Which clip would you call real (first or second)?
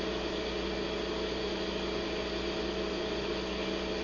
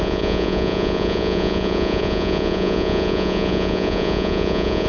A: first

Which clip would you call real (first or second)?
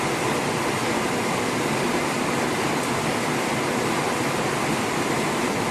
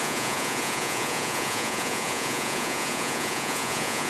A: first